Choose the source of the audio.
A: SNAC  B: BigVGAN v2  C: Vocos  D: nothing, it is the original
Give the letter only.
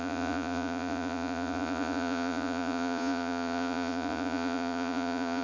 C